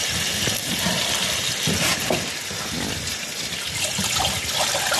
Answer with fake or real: real